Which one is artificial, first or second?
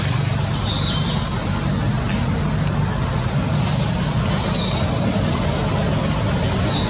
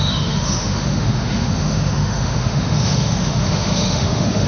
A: second